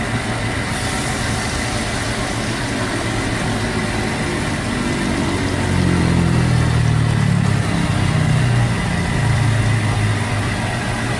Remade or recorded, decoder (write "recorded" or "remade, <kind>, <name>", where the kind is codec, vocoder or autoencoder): recorded